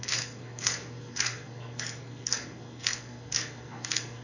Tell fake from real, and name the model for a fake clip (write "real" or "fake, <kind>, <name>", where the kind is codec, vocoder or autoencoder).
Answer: fake, codec, SNAC